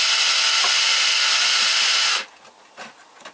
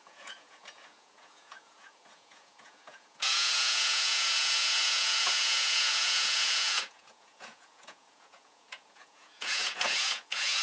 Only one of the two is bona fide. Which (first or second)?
first